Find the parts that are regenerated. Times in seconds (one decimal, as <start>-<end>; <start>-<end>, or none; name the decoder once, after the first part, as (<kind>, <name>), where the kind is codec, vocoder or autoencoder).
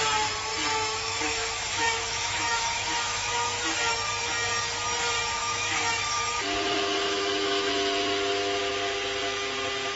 0.7-3.8 (autoencoder, DAC-VAE); 5.4-7.7